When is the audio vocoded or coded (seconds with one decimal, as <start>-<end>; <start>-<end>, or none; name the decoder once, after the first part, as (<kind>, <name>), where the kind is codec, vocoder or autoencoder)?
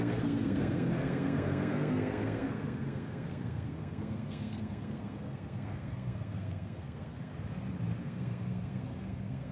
0.0-7.3 (codec, SNAC); 8.0-9.5